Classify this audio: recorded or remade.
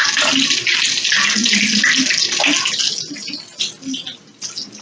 recorded